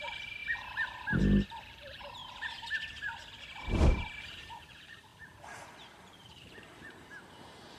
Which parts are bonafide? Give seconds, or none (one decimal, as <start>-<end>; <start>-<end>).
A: 2.2-4.2